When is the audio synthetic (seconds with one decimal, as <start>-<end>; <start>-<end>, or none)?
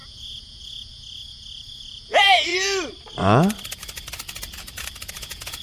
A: 0.0-2.5; 5.1-5.6